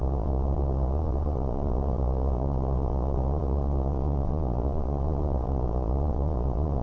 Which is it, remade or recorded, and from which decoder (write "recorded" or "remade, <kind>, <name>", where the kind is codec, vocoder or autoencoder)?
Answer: remade, vocoder, Vocos